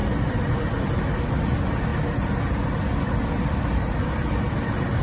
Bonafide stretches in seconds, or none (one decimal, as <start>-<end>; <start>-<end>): 0.0-3.2; 4.6-5.0